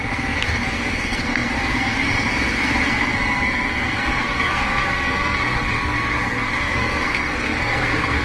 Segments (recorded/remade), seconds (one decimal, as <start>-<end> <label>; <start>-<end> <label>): 0.0-8.2 remade